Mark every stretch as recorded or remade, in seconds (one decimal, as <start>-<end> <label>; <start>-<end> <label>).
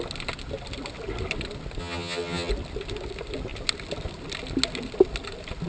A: 0.0-1.8 recorded; 1.8-2.5 remade; 2.5-5.7 recorded